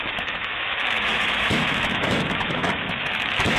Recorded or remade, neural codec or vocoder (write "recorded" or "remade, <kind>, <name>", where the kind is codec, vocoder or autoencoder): remade, autoencoder, DAC-VAE